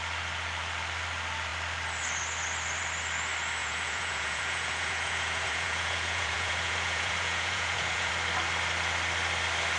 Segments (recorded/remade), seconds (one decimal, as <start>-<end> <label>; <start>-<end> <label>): 0.0-3.6 recorded; 3.6-8.1 remade; 8.1-9.8 recorded